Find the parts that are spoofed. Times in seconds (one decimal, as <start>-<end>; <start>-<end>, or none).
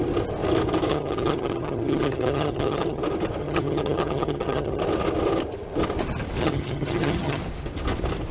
0.9-3.0; 3.4-4.8; 6.4-7.4